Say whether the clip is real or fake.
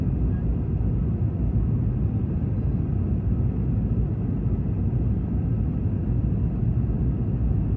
real